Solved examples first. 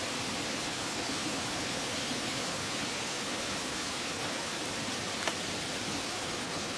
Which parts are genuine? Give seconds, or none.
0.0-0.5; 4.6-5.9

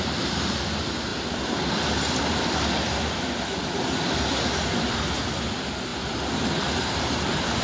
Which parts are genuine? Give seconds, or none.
0.0-7.6

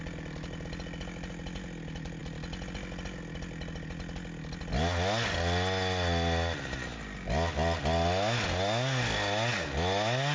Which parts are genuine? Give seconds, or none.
0.0-10.3

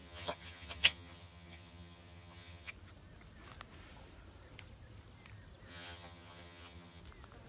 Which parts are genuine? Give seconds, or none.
2.7-5.7; 7.0-7.5

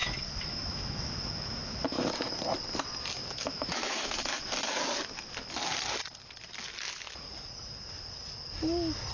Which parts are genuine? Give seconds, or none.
2.1-3.2; 4.4-9.1